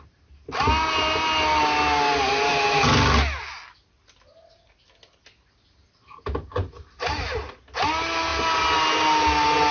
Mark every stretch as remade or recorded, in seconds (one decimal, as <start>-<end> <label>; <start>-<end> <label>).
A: 0.0-9.7 recorded